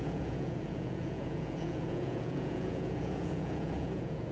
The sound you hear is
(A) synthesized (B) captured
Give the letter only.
A